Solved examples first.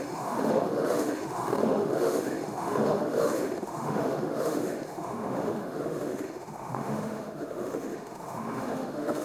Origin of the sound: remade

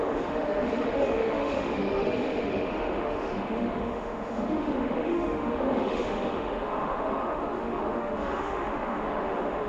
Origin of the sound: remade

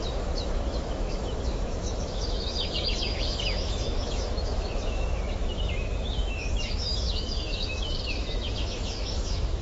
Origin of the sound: remade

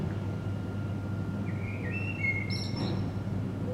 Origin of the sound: recorded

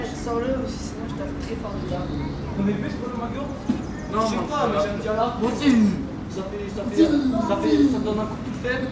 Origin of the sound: recorded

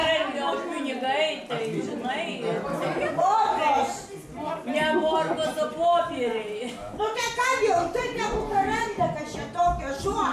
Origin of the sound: recorded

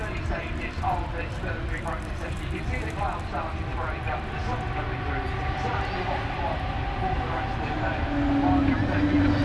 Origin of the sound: recorded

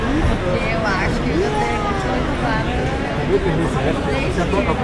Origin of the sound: recorded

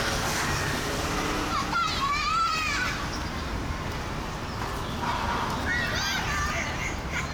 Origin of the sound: recorded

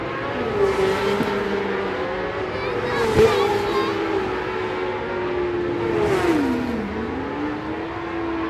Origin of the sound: recorded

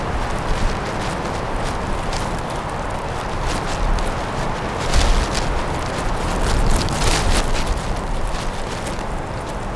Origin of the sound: recorded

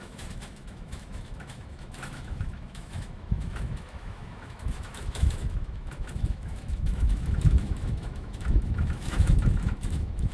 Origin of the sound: remade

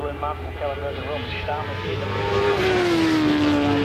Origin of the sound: recorded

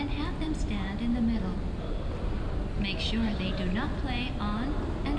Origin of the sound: recorded